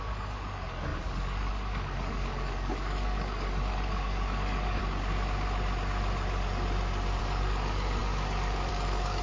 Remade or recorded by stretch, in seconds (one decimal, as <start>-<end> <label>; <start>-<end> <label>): 0.0-4.8 remade; 4.8-7.2 recorded; 7.2-9.2 remade

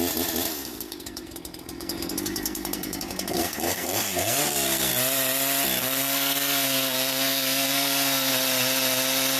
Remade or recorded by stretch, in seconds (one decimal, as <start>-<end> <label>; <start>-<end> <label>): 0.0-0.5 recorded; 0.5-4.9 remade; 4.9-5.8 recorded; 5.8-8.3 remade; 8.3-9.4 recorded

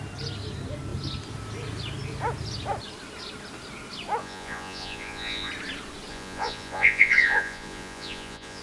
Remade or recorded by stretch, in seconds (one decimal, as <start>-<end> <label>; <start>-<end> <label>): 0.0-4.2 recorded; 4.2-5.5 remade; 5.5-6.1 recorded; 6.1-8.6 remade

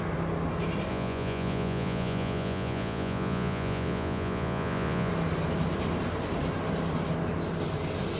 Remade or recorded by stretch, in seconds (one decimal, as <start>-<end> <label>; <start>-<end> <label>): 0.0-0.9 recorded; 0.9-5.1 remade; 5.1-8.2 recorded

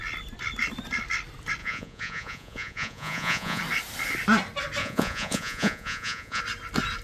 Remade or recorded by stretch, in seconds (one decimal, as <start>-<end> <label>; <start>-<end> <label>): 0.0-1.6 recorded; 1.6-3.6 remade; 3.6-4.8 recorded; 4.8-6.4 remade; 6.4-7.0 recorded

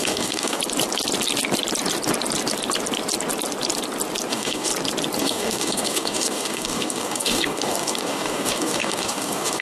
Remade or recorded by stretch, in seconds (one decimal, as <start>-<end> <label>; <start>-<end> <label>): 0.0-0.6 remade; 0.6-4.3 recorded; 4.3-4.7 remade; 4.7-5.2 recorded; 5.2-9.6 remade